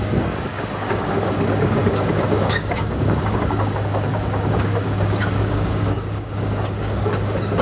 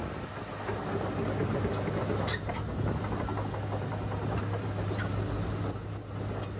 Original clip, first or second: second